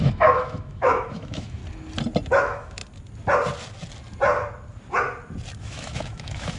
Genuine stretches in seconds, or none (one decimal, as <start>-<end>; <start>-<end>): 1.6-2.3; 2.8-5.6